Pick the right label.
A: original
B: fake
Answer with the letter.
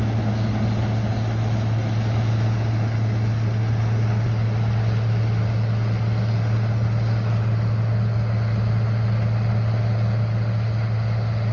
A